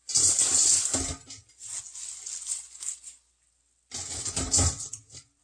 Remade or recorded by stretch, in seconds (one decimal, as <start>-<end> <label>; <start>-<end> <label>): 0.0-5.4 recorded